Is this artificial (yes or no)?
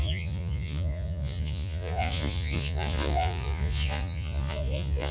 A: yes